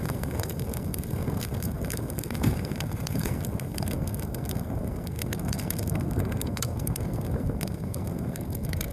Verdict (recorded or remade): remade